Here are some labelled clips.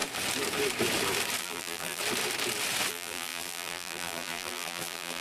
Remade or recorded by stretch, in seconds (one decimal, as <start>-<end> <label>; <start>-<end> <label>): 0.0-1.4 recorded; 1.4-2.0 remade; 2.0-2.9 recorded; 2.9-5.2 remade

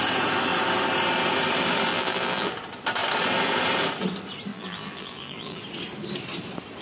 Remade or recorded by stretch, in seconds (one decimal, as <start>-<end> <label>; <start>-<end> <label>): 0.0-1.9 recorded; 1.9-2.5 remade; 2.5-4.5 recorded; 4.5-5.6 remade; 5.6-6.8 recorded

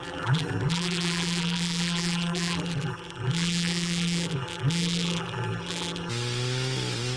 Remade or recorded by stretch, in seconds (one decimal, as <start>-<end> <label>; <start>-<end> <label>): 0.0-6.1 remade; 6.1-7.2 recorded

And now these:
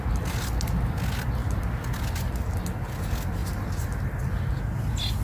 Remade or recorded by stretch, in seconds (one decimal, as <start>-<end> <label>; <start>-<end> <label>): 0.0-5.2 recorded

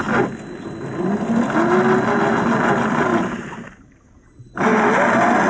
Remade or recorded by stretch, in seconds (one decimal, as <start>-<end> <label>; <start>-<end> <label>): 0.0-3.1 recorded; 3.1-4.9 remade; 4.9-5.5 recorded

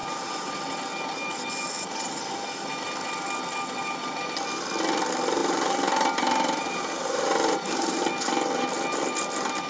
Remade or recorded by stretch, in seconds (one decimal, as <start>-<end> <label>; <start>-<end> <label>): 0.0-0.5 remade; 0.5-5.4 recorded; 5.4-8.0 remade; 8.0-9.7 recorded

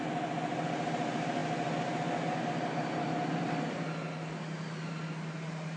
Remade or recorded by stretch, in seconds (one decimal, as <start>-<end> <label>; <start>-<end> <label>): 0.0-5.8 recorded

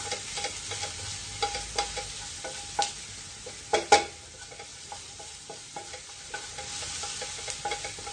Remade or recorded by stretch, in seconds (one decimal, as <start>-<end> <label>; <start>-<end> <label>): 0.0-4.7 recorded; 4.7-6.5 remade; 6.5-8.1 recorded